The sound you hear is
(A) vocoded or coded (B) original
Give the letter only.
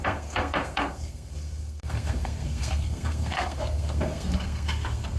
A